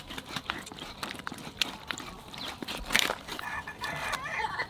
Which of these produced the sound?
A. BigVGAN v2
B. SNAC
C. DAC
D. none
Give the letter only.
A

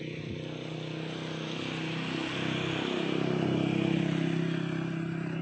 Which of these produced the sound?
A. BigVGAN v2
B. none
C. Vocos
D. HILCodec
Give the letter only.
B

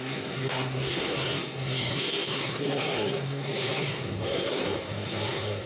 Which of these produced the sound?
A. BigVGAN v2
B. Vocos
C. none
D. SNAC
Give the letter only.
D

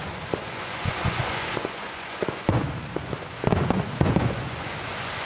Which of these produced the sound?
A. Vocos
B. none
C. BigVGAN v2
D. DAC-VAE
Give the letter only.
A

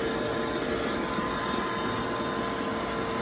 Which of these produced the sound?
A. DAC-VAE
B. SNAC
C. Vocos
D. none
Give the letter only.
D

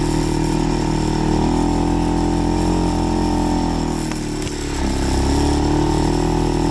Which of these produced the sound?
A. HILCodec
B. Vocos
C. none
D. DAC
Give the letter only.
C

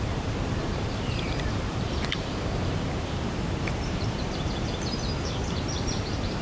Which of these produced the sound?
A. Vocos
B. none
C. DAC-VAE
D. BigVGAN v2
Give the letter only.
D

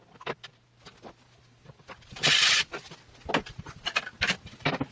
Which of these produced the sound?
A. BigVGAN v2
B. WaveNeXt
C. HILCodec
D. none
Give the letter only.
D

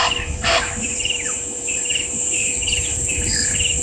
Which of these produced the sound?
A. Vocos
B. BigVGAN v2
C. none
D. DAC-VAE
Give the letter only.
B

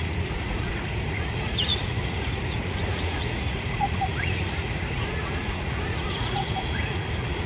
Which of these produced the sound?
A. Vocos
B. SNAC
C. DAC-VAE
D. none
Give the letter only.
A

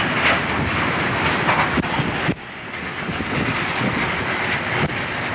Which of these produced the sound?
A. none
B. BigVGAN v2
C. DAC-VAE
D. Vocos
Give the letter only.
A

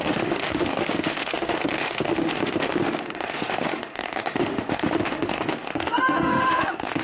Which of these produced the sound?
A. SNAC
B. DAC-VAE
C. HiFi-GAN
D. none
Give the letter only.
B